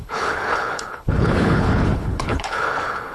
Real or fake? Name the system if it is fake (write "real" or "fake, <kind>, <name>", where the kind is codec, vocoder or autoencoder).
fake, codec, HILCodec